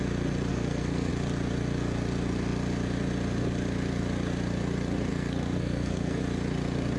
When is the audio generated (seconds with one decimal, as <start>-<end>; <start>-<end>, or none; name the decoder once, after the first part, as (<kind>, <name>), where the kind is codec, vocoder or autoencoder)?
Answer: 0.5-1.1 (codec, SNAC); 5.1-6.2